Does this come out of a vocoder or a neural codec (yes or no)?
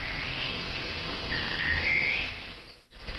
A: yes